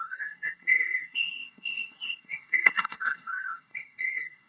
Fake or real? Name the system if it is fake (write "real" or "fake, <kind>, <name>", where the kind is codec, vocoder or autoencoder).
fake, codec, SNAC